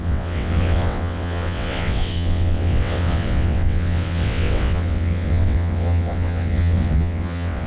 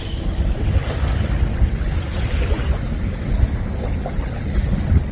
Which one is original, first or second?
second